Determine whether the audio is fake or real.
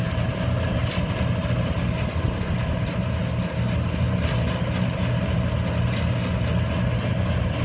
real